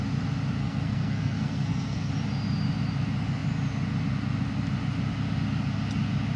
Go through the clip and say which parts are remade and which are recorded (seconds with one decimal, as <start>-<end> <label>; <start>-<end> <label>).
0.0-0.6 recorded; 0.6-2.1 remade; 2.1-6.4 recorded